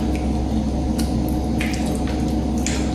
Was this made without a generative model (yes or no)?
yes